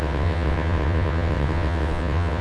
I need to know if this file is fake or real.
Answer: fake